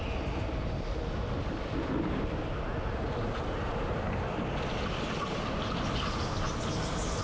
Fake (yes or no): no